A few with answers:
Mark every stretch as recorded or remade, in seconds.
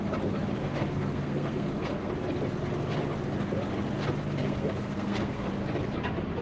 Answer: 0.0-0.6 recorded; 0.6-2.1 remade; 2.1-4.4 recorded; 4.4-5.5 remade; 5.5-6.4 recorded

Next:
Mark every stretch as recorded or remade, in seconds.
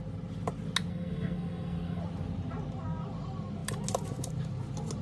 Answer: 0.0-0.9 recorded; 0.9-2.0 remade; 2.0-5.0 recorded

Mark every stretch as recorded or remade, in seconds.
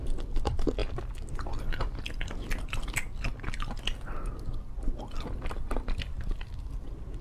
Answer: 0.0-7.2 recorded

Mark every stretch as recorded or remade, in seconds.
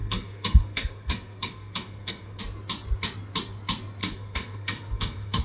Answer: 0.0-2.4 remade; 2.4-4.0 recorded; 4.0-5.4 remade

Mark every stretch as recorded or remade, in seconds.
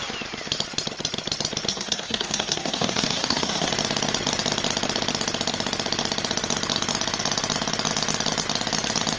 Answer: 0.0-1.7 recorded; 1.7-3.7 remade; 3.7-9.2 recorded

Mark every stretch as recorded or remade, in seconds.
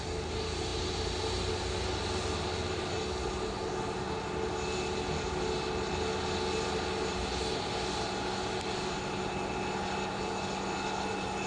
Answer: 0.0-11.5 recorded